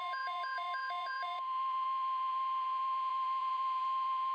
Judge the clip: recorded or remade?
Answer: remade